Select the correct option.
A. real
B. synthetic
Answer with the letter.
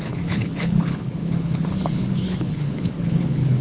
B